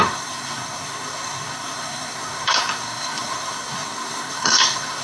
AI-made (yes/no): yes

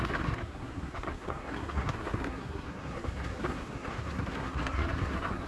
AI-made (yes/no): yes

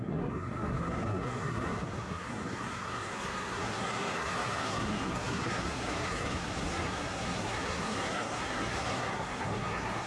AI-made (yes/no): yes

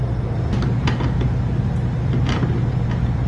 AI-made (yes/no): no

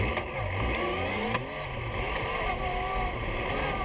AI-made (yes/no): no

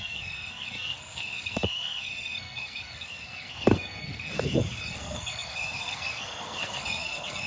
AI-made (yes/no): yes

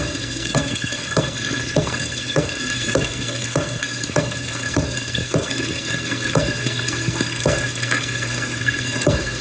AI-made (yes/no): yes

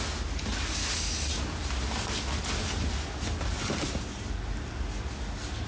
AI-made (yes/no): no